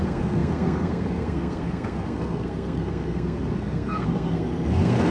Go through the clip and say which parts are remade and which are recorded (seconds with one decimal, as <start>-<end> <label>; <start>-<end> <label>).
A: 0.0-5.1 remade